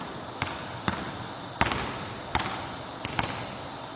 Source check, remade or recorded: recorded